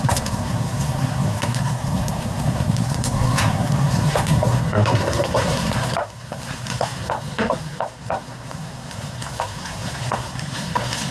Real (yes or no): no